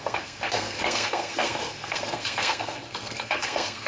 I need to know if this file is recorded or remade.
remade